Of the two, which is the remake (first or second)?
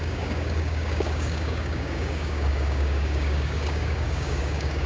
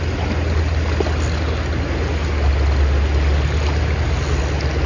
first